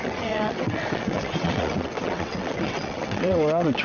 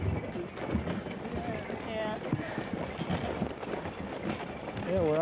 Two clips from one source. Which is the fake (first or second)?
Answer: first